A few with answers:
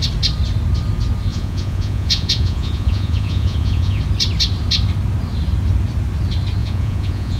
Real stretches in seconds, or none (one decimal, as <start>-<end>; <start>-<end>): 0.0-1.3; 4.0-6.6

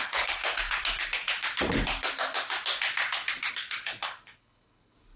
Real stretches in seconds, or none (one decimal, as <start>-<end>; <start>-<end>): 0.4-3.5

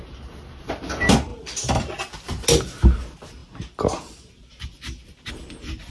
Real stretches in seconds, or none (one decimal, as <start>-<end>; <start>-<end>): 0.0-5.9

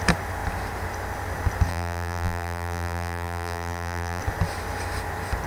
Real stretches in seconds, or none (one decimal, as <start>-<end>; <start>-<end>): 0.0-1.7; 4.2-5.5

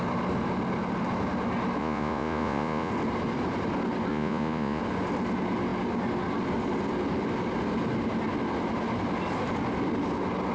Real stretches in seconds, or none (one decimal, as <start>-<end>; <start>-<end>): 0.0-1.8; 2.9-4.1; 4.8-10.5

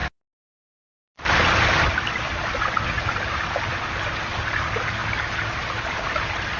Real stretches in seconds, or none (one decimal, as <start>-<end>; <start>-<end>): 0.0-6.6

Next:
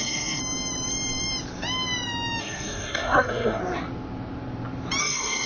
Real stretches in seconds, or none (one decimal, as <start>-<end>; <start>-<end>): 0.4-2.4; 3.6-5.0

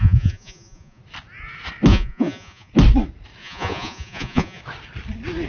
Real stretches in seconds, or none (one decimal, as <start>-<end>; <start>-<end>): 1.0-1.9; 2.7-3.4; 4.6-5.5